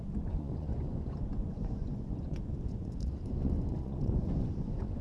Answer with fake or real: fake